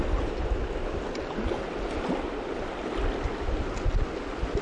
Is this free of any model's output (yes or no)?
yes